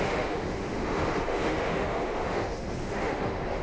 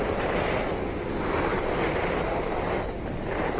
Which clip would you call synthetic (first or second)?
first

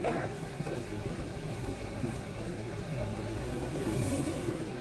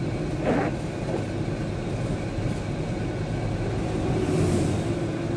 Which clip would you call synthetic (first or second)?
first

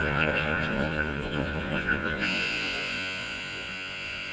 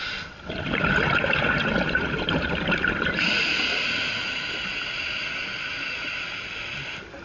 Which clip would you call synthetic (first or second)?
first